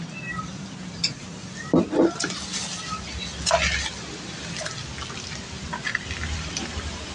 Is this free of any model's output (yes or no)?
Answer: yes